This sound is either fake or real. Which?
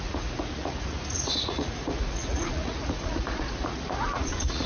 fake